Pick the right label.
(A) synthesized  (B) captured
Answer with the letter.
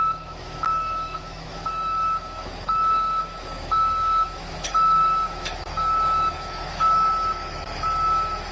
A